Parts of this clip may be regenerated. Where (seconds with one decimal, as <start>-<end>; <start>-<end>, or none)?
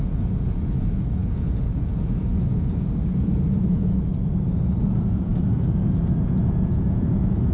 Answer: 0.0-4.1; 4.8-7.5